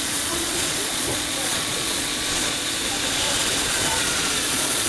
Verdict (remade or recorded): remade